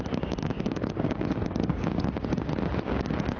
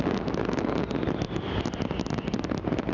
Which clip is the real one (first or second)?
second